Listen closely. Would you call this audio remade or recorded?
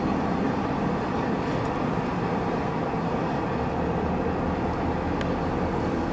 recorded